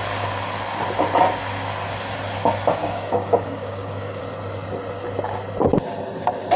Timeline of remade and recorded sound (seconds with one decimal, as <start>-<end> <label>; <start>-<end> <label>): 0.0-2.8 recorded; 2.8-4.2 remade; 4.2-6.6 recorded